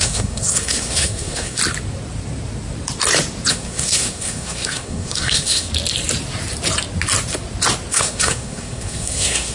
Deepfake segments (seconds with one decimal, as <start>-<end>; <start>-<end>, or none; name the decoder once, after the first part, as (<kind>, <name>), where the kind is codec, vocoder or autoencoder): 0.0-1.6 (codec, SNAC); 3.5-5.7; 7.9-9.5